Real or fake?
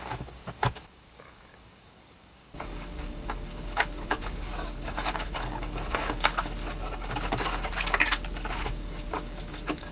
fake